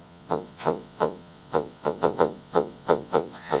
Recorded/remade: remade